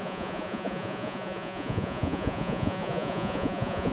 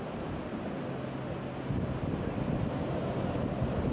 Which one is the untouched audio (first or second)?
second